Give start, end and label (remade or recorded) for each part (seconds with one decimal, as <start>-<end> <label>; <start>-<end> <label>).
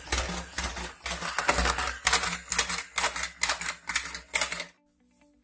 0.0-5.4 recorded